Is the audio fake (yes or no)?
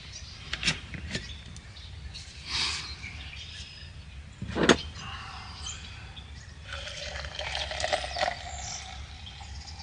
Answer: no